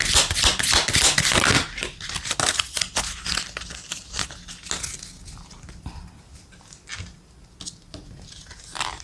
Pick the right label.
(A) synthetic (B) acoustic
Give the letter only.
B